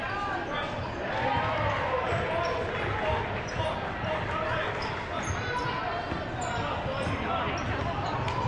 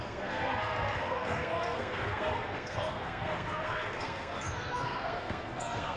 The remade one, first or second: second